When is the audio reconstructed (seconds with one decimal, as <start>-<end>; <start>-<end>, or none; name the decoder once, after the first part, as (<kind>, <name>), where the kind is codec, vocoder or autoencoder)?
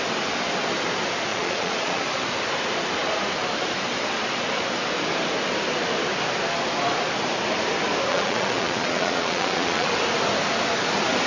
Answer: 1.3-2.0 (vocoder, Vocos); 8.1-9.9